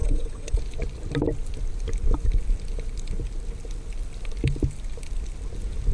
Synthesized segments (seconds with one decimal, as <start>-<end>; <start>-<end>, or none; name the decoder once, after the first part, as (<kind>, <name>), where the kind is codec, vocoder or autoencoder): 0.0-0.6 (vocoder, WaveNeXt)